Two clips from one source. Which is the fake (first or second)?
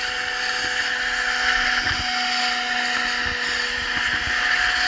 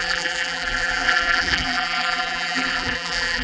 second